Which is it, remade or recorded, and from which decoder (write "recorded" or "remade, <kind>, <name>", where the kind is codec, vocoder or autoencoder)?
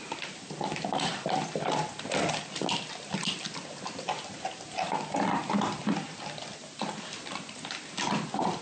recorded